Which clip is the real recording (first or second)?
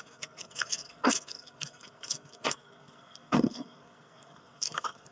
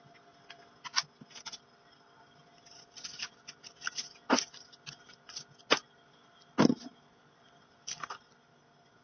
second